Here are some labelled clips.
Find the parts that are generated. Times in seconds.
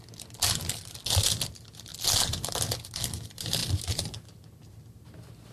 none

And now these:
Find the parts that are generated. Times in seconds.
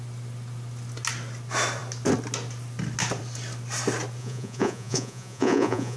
4.2-6.0 (vocoder, Vocos)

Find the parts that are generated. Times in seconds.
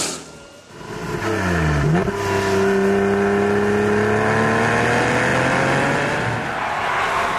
none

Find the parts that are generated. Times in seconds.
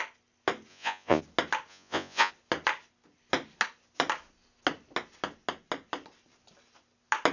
0.7-1.2 (vocoder, Vocos); 1.7-2.3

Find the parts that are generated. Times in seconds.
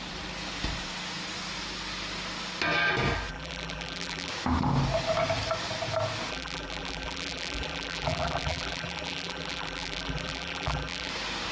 3.3-4.3 (vocoder, BigVGAN v2); 6.3-11.1